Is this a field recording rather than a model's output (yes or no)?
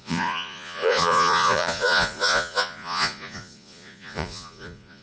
no